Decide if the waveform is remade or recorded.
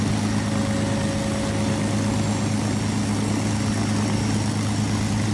recorded